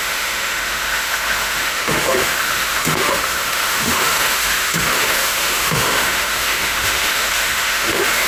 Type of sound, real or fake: fake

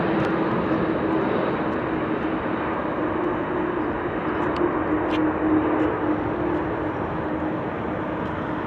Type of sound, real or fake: real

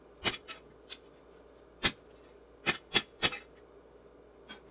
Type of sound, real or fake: real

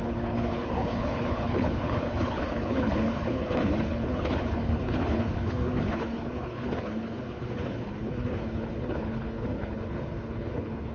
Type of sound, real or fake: fake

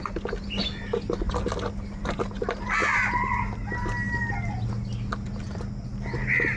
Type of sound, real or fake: real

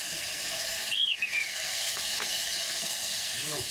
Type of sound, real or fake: fake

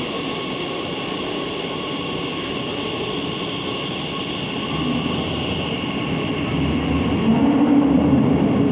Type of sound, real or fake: real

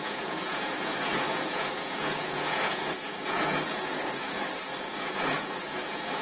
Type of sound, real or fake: fake